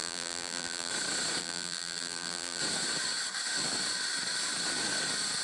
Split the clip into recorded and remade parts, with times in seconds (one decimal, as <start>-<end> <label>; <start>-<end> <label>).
0.0-0.9 remade; 0.9-1.4 recorded; 1.4-2.6 remade; 2.6-5.4 recorded